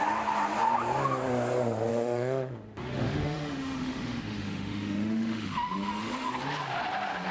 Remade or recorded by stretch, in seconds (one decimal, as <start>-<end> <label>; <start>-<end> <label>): 0.0-1.9 recorded; 1.9-6.3 remade; 6.3-7.3 recorded